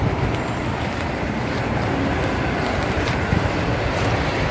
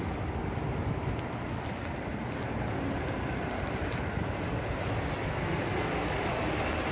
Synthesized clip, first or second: first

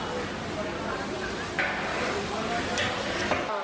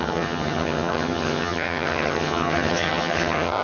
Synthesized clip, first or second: second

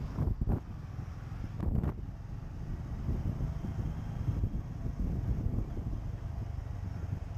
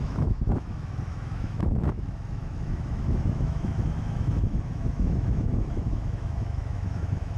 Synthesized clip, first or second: second